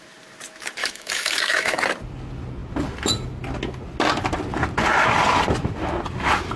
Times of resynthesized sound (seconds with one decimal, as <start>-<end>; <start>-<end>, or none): 0.8-1.8